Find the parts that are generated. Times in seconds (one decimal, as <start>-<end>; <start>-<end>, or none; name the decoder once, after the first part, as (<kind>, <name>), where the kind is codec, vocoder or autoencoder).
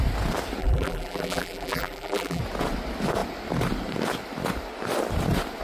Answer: 0.6-2.4 (vocoder, BigVGAN v2)